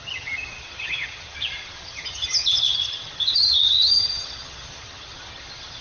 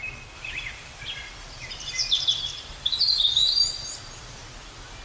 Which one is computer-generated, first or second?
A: first